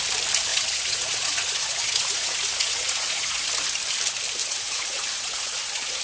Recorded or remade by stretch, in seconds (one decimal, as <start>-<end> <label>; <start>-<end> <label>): 0.0-0.5 recorded; 0.5-3.5 remade; 3.5-4.4 recorded; 4.4-6.0 remade